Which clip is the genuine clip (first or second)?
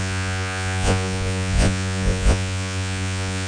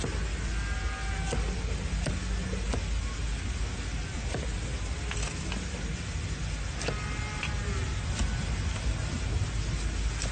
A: second